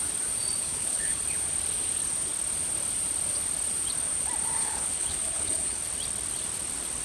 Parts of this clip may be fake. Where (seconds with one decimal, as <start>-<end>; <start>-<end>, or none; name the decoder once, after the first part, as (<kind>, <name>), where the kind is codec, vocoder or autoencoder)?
0.6-1.2 (codec, HILCodec); 4.6-5.8